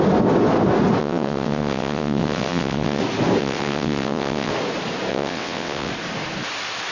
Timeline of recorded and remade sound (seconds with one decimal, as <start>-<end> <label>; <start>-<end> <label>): 0.0-1.0 recorded; 1.0-3.0 remade; 3.0-3.4 recorded; 3.4-4.5 remade; 4.5-5.1 recorded; 5.1-5.9 remade; 5.9-6.9 recorded